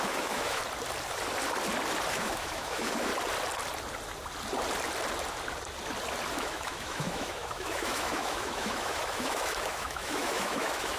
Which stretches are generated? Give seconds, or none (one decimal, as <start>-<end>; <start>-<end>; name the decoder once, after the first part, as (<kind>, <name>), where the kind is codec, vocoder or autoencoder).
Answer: 0.0-0.6 (autoencoder, DAC-VAE); 2.1-3.1; 6.3-11.0